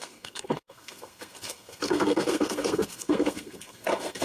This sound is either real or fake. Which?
fake